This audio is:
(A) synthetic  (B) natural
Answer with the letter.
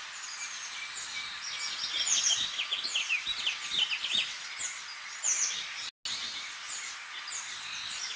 B